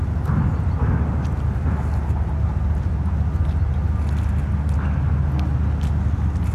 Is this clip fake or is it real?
real